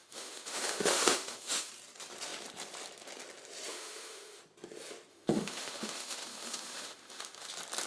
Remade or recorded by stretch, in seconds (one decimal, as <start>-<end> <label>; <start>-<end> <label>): 0.0-1.7 remade; 1.7-3.7 recorded; 3.7-4.4 remade; 4.4-5.1 recorded; 5.1-7.5 remade; 7.5-7.9 recorded